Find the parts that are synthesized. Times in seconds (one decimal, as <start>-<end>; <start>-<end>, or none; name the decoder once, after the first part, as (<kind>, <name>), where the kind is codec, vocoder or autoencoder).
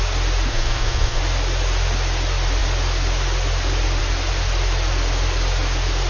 0.5-1.2 (codec, SNAC)